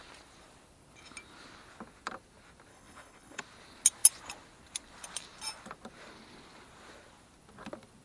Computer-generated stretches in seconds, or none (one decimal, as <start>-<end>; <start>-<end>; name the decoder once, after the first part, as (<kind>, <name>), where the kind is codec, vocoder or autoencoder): 2.7-3.4 (codec, HILCodec)